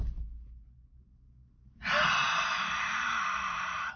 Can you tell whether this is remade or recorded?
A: recorded